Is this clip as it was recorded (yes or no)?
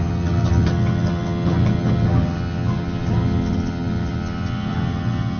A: no